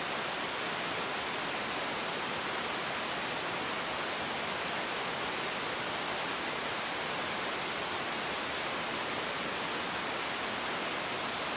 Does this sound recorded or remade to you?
recorded